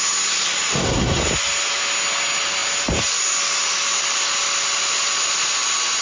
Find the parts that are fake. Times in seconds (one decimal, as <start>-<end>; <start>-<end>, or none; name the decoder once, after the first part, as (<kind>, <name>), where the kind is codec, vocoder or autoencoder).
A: 0.7-1.2 (codec, SNAC)